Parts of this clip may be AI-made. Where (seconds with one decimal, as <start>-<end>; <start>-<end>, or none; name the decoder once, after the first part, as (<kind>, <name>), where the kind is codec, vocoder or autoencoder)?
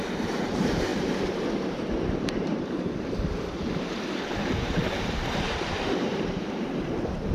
0.0-0.9 (vocoder, BigVGAN v2); 1.6-7.3